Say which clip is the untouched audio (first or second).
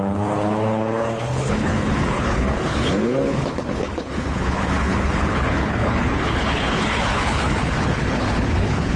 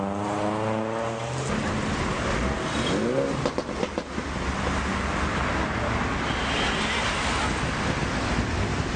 second